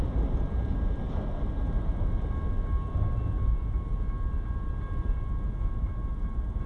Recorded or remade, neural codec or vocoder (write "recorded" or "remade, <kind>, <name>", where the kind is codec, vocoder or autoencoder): recorded